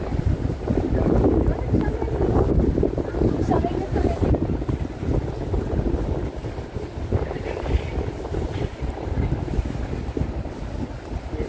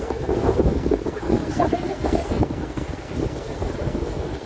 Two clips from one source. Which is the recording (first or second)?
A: first